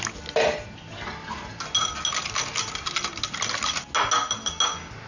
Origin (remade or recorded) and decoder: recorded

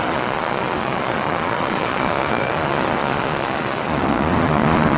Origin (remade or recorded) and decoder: remade, vocoder, Vocos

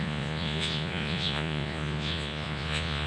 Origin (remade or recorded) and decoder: remade, vocoder, Vocos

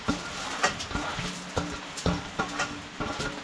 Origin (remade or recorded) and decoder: recorded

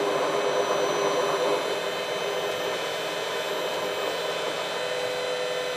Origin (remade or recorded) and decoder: recorded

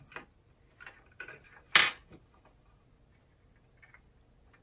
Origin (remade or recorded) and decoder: recorded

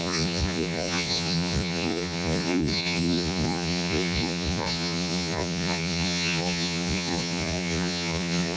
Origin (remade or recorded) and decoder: remade, vocoder, Vocos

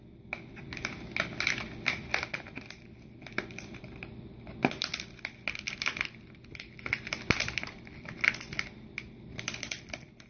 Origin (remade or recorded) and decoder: recorded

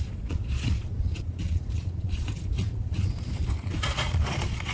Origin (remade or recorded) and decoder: remade, vocoder, Vocos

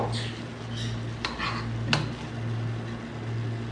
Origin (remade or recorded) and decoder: recorded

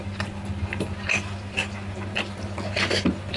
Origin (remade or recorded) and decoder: recorded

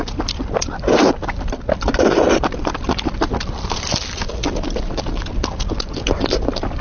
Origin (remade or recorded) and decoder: recorded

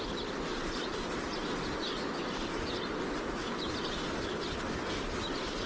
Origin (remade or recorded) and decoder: recorded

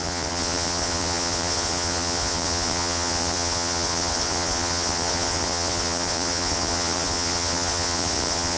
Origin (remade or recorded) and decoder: remade, vocoder, Vocos